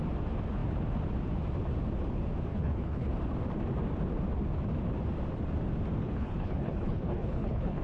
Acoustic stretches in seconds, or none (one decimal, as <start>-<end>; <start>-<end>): 0.0-2.5; 3.1-6.0